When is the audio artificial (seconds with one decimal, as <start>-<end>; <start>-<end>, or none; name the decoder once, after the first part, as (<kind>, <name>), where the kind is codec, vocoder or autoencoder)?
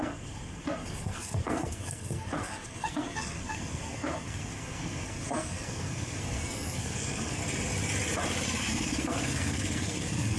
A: 0.0-7.4 (codec, SNAC); 8.6-10.4